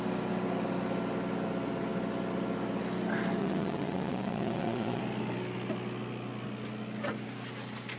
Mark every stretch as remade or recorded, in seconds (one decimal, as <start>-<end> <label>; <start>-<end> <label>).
0.0-3.4 recorded; 3.4-5.0 remade; 5.0-8.0 recorded